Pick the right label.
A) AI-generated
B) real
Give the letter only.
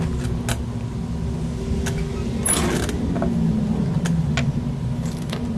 B